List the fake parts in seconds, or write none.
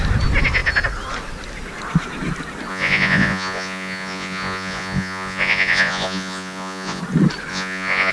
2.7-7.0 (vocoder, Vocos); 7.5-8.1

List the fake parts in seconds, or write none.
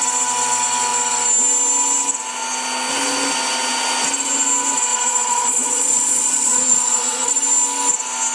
4.9-7.3 (vocoder, Vocos)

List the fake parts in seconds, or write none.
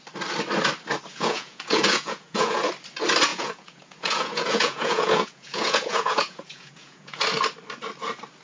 1.1-2.6 (vocoder, Vocos); 3.3-7.2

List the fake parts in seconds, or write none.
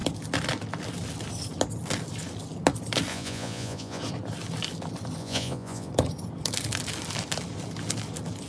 3.1-4.0 (vocoder, Vocos); 5.2-5.9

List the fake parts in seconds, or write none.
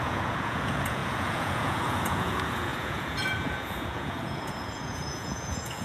0.0-5.8 (vocoder, Vocos)